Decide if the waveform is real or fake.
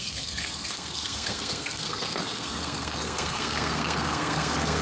fake